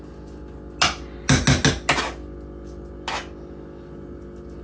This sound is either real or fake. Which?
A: real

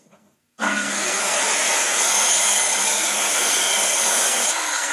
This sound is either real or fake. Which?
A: fake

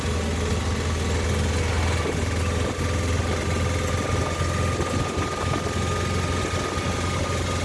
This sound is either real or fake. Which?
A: real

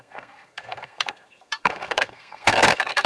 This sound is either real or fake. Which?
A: fake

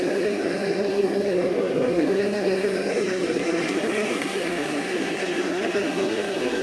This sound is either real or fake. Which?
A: fake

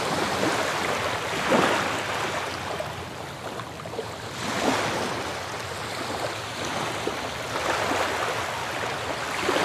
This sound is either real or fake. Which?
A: real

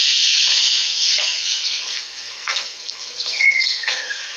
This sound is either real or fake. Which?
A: fake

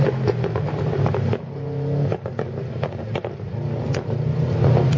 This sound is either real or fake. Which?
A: real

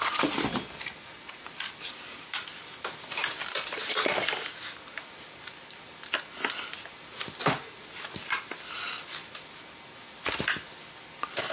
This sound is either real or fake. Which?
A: real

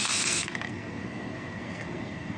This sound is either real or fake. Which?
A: fake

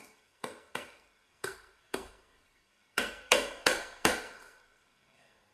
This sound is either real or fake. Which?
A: fake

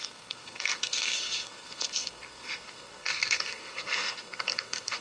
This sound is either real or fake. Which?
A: fake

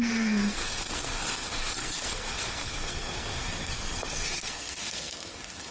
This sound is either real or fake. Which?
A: fake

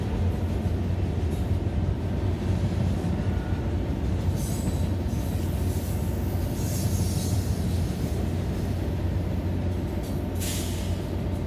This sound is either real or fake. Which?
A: real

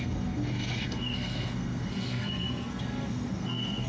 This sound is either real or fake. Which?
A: fake